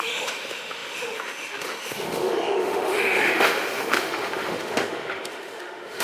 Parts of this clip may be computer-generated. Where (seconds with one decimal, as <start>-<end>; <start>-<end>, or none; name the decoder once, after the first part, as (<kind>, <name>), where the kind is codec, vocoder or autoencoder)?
0.0-6.0 (autoencoder, DAC-VAE)